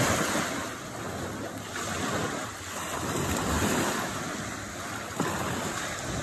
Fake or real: real